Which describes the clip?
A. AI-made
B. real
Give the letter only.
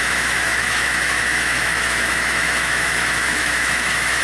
A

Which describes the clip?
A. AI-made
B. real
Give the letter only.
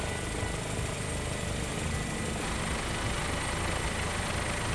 B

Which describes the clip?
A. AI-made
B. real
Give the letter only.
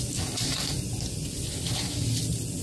B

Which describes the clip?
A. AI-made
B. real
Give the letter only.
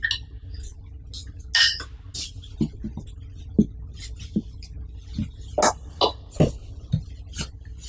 B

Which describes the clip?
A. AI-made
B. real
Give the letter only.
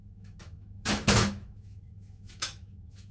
A